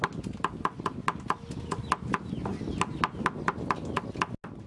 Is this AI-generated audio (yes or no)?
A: no